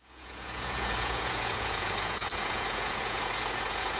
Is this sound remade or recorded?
remade